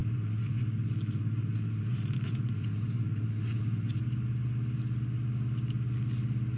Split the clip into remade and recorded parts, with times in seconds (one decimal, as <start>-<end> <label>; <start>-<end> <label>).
0.0-4.0 remade; 4.0-6.6 recorded